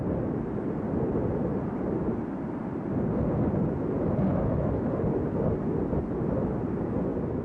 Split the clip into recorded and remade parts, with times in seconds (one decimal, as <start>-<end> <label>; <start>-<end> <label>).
0.0-4.3 recorded; 4.3-4.9 remade; 4.9-7.4 recorded